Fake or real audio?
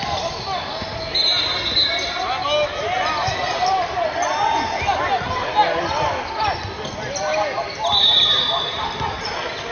real